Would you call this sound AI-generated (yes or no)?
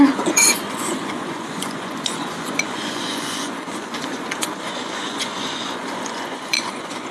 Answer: yes